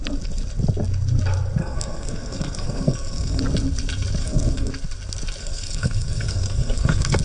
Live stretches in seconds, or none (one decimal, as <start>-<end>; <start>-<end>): 0.0-1.6; 3.4-4.2; 4.7-5.4